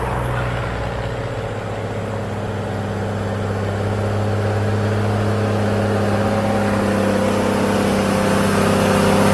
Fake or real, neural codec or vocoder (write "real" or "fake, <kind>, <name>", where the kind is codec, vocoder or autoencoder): real